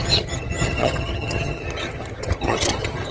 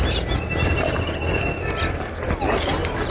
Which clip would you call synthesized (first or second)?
first